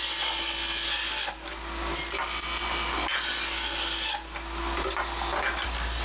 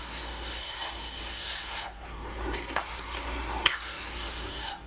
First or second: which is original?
first